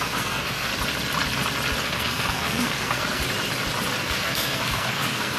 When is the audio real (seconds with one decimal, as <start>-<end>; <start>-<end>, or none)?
0.7-1.8; 3.2-4.0